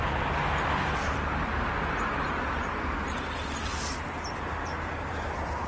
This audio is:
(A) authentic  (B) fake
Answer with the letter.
A